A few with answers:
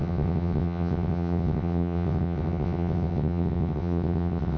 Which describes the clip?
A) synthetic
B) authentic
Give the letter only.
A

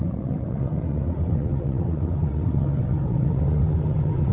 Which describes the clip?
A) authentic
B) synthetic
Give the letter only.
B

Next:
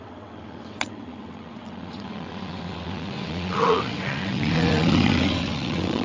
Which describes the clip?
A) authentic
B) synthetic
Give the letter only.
B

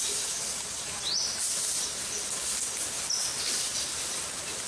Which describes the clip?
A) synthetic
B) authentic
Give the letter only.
B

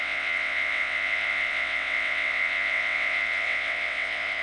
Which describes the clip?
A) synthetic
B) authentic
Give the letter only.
A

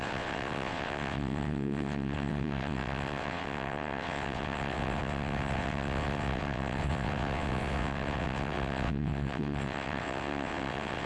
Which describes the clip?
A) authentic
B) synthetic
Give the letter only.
B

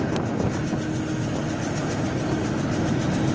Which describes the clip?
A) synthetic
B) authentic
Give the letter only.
B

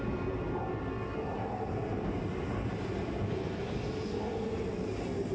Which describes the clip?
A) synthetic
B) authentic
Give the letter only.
B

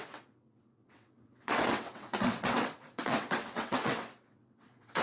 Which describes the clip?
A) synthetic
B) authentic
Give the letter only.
A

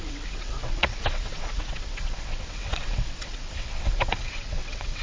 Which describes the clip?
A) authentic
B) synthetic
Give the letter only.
B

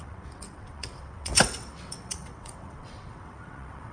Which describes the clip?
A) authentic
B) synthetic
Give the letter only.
B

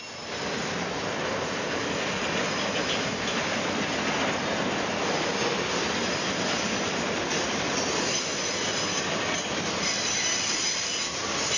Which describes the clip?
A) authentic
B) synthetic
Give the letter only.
A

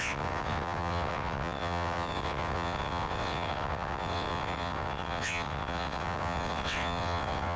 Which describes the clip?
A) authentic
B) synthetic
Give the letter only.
B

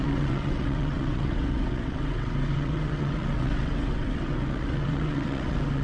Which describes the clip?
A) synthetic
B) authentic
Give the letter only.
A